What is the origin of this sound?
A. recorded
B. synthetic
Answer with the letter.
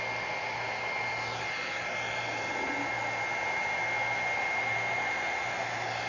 A